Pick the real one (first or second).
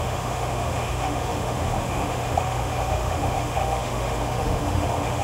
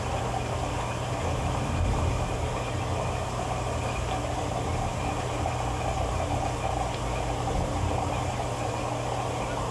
second